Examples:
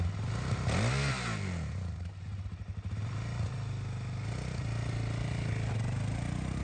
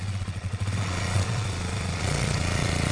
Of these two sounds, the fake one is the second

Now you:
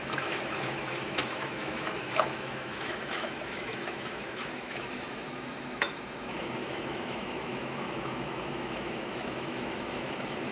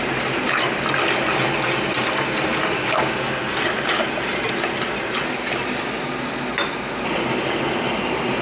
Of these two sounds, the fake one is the first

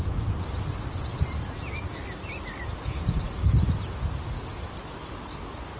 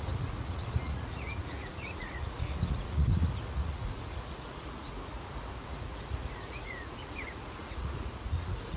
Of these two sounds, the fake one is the second